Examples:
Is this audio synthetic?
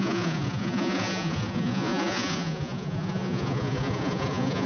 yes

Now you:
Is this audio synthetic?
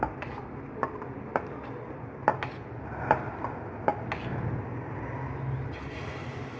no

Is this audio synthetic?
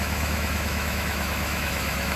yes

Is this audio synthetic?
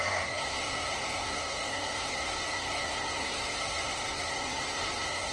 yes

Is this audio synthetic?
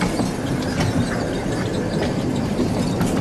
no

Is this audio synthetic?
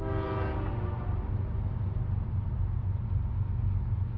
no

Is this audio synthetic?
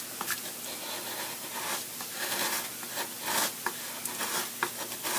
no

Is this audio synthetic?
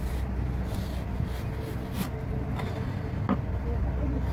no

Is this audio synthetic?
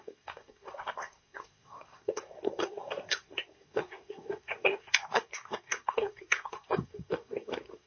yes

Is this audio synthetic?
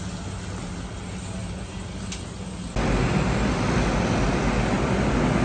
no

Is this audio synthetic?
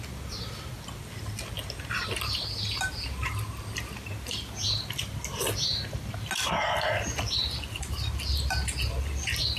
no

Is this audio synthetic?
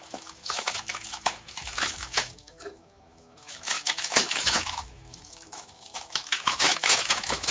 yes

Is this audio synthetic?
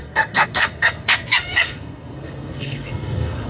yes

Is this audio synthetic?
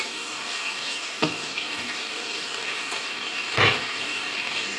yes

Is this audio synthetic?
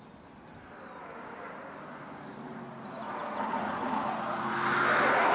no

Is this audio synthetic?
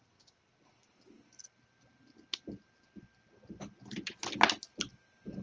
no